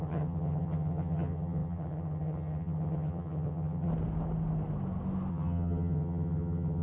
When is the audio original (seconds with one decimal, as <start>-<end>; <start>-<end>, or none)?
3.9-5.3